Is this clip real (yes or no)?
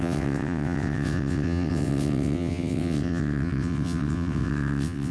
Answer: no